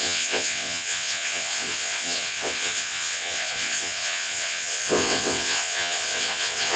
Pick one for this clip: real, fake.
fake